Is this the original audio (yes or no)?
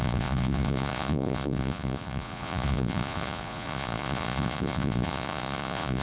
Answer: no